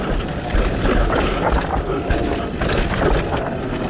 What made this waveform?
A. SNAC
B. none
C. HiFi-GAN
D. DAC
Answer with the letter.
B